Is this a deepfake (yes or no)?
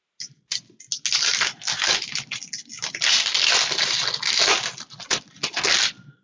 no